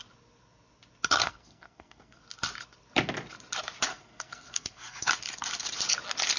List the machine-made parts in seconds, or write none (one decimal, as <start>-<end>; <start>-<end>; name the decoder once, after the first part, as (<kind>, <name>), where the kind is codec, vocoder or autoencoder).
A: 1.2-2.2 (codec, SNAC); 3.9-5.1